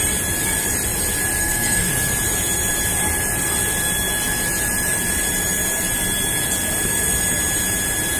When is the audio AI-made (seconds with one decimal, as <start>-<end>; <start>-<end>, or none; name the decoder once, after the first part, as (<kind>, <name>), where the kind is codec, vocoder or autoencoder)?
1.4-1.9 (codec, SNAC)